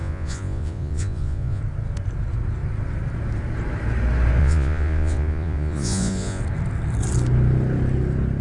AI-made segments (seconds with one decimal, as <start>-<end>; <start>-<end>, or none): 0.0-1.6; 4.4-6.4